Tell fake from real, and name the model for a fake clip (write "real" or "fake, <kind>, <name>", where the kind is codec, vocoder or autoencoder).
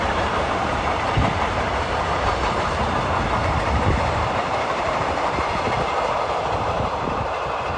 fake, vocoder, BigVGAN v2